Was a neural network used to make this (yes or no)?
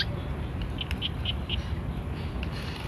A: no